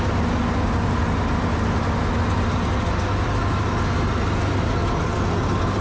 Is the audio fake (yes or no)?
no